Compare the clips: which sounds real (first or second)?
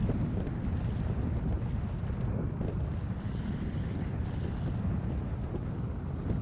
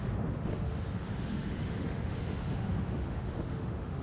first